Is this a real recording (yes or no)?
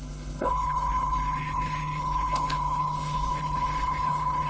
no